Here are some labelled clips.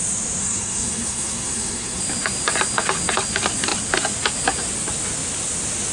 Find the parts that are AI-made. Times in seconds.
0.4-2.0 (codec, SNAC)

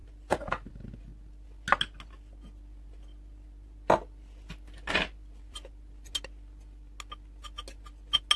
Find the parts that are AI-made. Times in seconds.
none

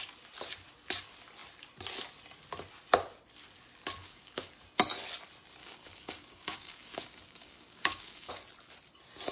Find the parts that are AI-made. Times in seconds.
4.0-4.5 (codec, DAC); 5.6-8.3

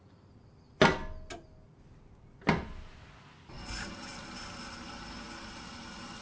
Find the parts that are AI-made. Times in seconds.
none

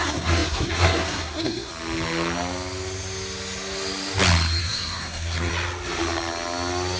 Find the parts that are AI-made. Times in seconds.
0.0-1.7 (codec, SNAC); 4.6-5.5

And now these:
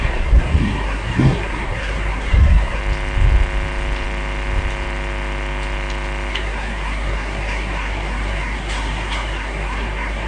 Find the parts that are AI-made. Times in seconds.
0.0-2.8 (codec, SNAC); 6.3-10.3